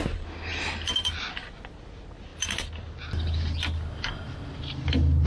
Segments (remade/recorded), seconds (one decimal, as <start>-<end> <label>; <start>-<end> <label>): 0.0-5.3 recorded